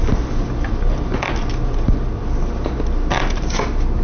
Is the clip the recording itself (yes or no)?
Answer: yes